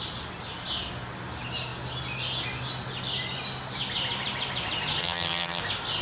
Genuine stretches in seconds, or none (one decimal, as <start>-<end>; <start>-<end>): 0.0-5.0; 5.6-6.0